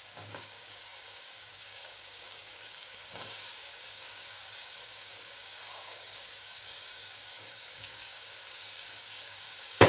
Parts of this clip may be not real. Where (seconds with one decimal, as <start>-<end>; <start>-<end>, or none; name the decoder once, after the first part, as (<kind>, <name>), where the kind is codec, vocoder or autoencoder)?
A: 0.0-9.9 (codec, DAC)